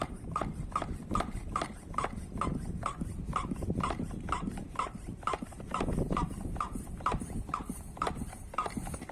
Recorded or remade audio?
remade